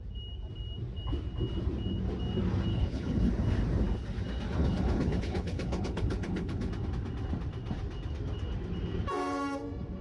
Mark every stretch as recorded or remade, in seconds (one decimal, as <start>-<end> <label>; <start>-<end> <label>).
0.0-2.7 recorded; 2.7-3.3 remade; 3.3-4.6 recorded; 4.6-6.7 remade; 6.7-10.0 recorded